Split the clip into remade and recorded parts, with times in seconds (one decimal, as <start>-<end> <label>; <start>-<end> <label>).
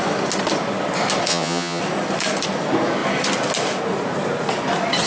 0.0-1.3 recorded; 1.3-1.8 remade; 1.8-5.1 recorded